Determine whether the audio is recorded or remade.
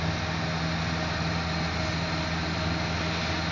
recorded